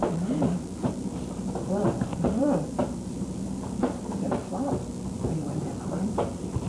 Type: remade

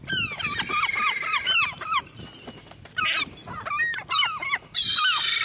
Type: recorded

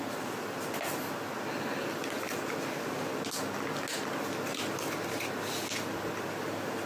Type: recorded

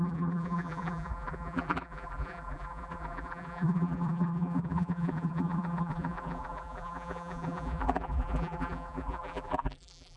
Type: remade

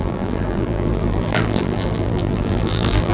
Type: remade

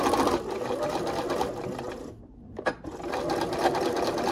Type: recorded